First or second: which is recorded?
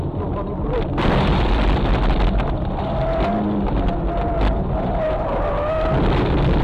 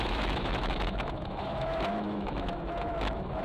first